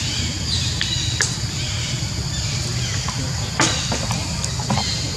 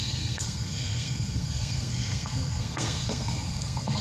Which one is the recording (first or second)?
first